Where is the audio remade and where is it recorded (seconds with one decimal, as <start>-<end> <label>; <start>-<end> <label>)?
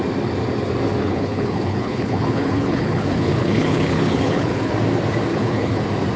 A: 0.0-1.0 recorded; 1.0-4.7 remade; 4.7-5.3 recorded; 5.3-5.8 remade; 5.8-6.2 recorded